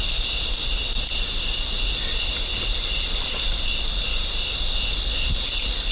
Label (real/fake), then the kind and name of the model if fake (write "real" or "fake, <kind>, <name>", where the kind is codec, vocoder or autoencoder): real